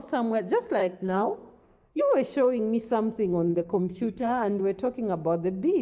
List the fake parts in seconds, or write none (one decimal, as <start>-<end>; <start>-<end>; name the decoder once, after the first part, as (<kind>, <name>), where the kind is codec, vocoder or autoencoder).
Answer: 0.8-2.0 (codec, SNAC); 3.5-4.6